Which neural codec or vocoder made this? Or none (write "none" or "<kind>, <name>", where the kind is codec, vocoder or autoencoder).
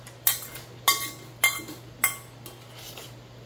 none